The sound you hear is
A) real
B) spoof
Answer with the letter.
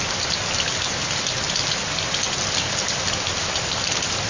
A